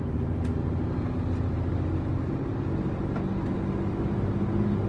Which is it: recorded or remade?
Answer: recorded